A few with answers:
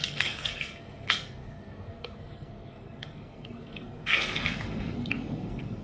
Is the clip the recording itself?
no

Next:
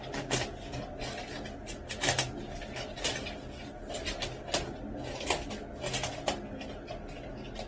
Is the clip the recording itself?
yes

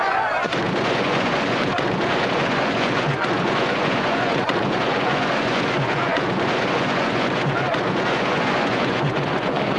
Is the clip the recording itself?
no